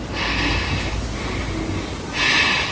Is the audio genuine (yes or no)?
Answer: yes